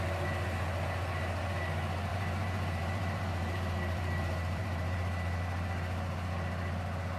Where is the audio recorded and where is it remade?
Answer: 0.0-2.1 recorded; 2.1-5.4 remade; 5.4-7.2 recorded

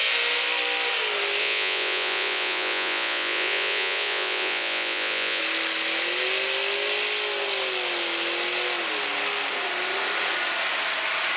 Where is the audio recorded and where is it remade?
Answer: 0.0-1.4 recorded; 1.4-5.4 remade; 5.4-11.4 recorded

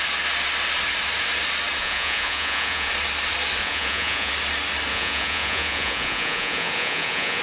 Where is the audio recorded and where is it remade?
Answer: 0.0-1.8 recorded; 1.8-2.9 remade; 2.9-3.6 recorded; 3.6-4.3 remade; 4.3-4.9 recorded; 4.9-7.4 remade

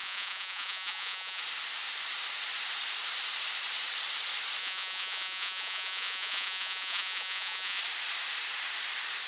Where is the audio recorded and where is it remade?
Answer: 0.0-1.4 remade; 1.4-4.6 recorded; 4.6-7.8 remade; 7.8-9.3 recorded

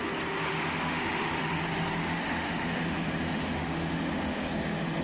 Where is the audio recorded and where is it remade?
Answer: 0.0-0.5 recorded; 0.5-1.6 remade; 1.6-2.0 recorded; 2.0-5.0 remade